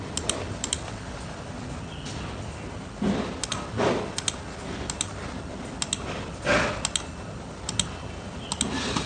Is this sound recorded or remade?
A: recorded